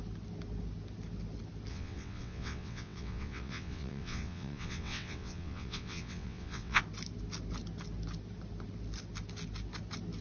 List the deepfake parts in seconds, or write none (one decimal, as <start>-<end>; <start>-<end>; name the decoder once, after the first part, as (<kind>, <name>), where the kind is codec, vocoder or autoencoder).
1.7-6.8 (vocoder, WaveNeXt)